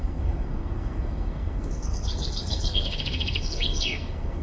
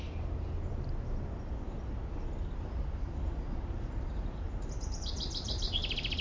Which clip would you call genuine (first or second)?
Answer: second